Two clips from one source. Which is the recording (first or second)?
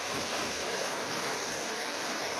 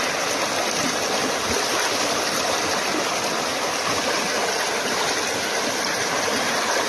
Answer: second